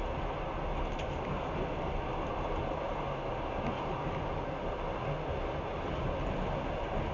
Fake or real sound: real